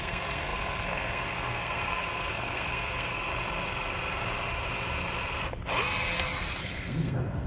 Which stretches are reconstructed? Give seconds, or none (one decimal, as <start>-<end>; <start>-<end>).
0.0-3.3; 6.6-7.5